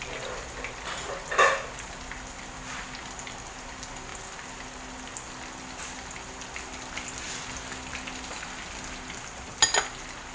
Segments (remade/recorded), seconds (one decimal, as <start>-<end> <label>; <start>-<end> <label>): 0.0-10.3 recorded